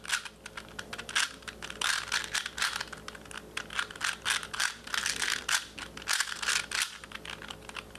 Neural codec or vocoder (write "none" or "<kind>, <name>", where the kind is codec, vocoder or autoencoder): none